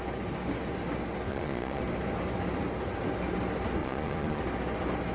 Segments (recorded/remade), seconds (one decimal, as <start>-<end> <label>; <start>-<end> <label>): 0.0-1.3 recorded; 1.3-1.8 remade; 1.8-3.8 recorded; 3.8-4.4 remade; 4.4-5.1 recorded